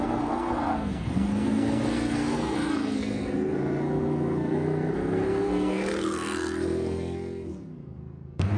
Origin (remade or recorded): remade